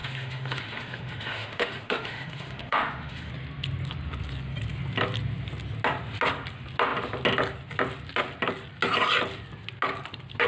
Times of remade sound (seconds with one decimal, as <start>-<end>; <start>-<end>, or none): 0.0-3.3